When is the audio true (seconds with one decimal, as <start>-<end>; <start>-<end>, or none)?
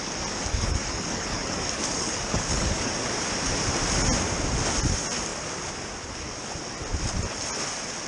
0.0-0.5; 2.9-8.1